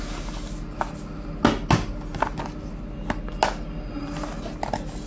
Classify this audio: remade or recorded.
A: recorded